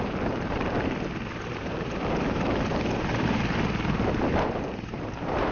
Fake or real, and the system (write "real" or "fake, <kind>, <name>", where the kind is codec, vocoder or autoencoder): fake, vocoder, BigVGAN v2